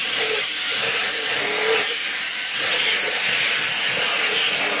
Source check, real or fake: real